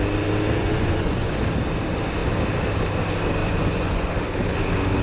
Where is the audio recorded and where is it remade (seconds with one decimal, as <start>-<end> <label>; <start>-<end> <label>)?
0.0-0.6 recorded; 0.6-1.4 remade; 1.4-3.4 recorded; 3.4-4.1 remade; 4.1-5.0 recorded